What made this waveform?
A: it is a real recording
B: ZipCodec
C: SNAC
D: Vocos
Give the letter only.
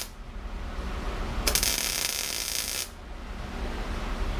A